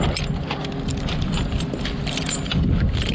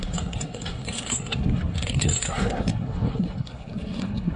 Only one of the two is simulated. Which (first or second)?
second